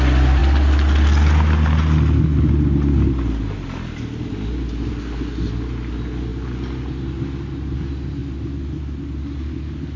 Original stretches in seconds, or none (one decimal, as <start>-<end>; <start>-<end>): 0.0-10.0